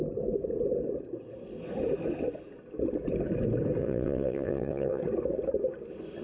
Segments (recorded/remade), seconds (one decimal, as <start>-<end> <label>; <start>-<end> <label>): 0.0-3.8 recorded; 3.8-5.0 remade; 5.0-6.2 recorded